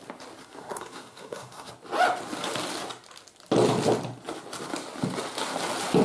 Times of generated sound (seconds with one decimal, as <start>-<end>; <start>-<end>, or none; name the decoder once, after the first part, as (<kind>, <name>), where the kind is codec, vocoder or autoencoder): 0.4-1.7 (codec, SNAC)